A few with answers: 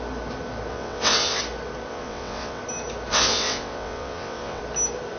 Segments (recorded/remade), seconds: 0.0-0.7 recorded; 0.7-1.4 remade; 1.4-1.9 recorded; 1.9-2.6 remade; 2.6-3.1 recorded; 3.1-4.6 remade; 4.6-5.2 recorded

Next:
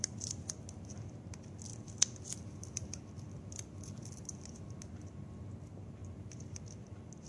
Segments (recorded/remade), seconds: 0.0-7.3 recorded